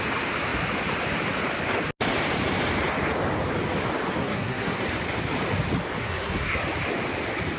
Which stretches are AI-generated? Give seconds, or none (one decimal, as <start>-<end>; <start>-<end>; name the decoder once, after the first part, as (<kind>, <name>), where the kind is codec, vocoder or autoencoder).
4.2-4.8 (codec, SNAC); 6.0-6.6